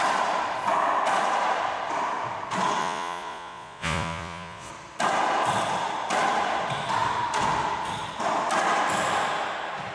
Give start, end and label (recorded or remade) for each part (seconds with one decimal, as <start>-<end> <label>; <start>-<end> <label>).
0.0-2.8 recorded; 2.8-4.7 remade; 4.7-9.9 recorded